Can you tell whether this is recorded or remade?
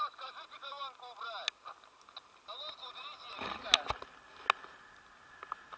recorded